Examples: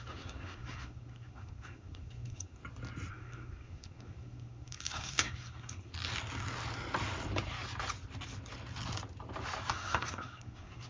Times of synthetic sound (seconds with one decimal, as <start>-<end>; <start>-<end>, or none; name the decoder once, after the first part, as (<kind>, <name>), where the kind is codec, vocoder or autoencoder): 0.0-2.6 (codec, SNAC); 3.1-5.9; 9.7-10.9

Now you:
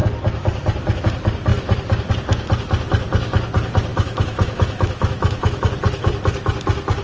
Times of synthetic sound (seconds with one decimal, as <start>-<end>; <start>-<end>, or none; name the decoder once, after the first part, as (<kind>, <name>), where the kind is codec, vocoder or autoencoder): 3.9-5.6 (autoencoder, DAC-VAE)

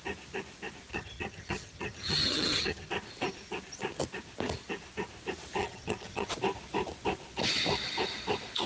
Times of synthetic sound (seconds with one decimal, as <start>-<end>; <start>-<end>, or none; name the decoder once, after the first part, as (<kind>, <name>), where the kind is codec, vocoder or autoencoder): 0.9-2.9 (vocoder, HiFi-GAN); 5.6-6.3

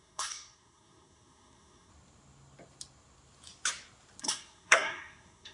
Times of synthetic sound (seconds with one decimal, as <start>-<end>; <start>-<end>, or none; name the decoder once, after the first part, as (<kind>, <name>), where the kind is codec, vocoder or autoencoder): 0.0-1.9 (codec, SNAC); 4.2-5.5

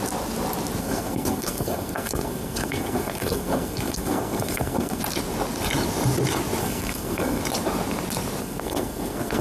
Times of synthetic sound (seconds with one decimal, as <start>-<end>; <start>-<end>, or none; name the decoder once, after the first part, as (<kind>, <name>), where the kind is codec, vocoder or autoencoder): 0.8-5.0 (codec, SNAC); 6.6-7.4; 8.4-9.4

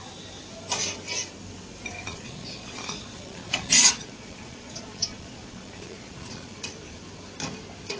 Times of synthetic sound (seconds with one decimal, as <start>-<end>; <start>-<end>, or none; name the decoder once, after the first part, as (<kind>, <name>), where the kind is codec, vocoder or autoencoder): 2.0-6.6 (vocoder, Vocos)